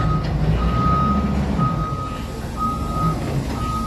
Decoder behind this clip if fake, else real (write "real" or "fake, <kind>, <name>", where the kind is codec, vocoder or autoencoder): real